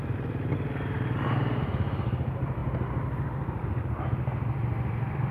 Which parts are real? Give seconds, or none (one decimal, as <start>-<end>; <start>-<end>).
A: 0.0-5.3